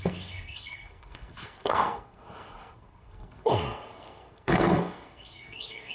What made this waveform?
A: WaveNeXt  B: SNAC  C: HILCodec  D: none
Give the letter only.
B